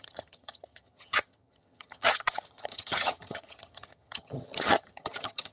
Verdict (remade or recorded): remade